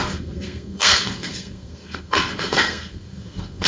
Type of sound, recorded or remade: remade